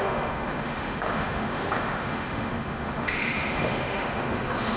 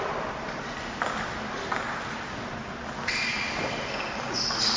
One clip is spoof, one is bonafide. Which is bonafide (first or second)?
second